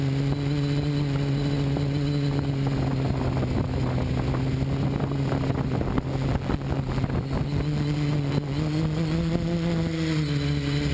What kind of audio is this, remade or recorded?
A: recorded